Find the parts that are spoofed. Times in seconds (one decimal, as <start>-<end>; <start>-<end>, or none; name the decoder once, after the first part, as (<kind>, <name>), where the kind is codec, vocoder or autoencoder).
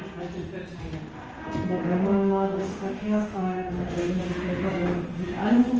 1.8-4.2 (autoencoder, DAC-VAE)